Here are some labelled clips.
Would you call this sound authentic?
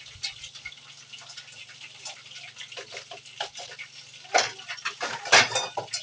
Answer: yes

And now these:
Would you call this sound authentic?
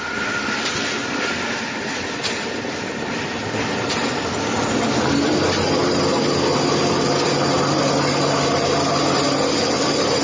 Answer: yes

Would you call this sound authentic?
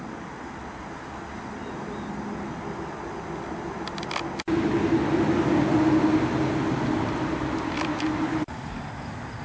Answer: yes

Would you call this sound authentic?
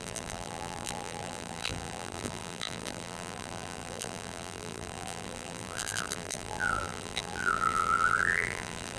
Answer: no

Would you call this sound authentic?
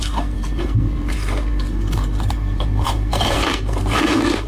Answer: no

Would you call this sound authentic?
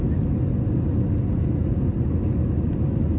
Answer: yes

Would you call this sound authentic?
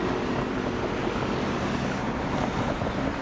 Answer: yes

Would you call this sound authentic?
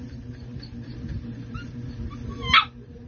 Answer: no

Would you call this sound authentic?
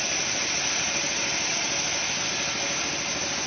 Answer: yes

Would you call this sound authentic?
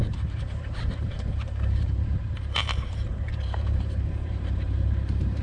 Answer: no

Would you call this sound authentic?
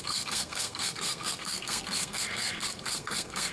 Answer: no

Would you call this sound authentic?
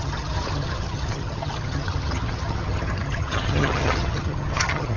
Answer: no